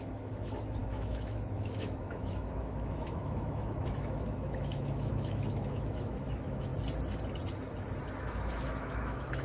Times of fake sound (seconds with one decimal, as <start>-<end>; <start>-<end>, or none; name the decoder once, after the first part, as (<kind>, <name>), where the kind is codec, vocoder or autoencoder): 0.0-6.7 (autoencoder, DAC-VAE); 8.2-9.4